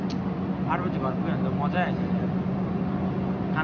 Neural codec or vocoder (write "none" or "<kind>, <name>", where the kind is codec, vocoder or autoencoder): none